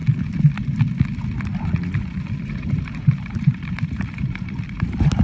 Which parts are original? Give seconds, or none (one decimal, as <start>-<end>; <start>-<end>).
0.0-2.0